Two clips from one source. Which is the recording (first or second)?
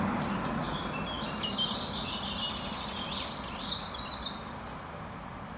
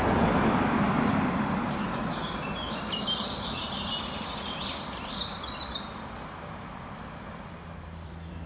first